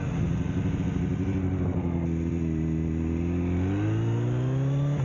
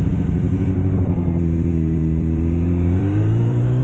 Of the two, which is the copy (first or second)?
second